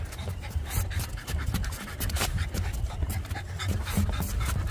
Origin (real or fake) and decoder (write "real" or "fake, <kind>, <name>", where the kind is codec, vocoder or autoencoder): real